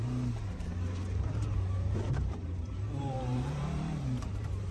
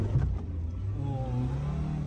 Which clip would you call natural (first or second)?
second